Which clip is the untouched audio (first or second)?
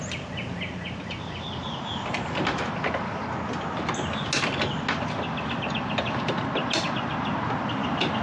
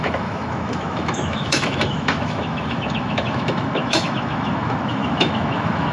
first